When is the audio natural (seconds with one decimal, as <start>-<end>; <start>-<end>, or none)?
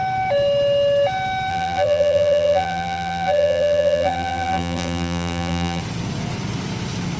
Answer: 0.0-1.5; 5.8-7.2